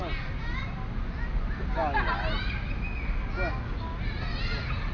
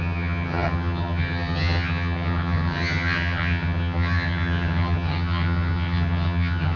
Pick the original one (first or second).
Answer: first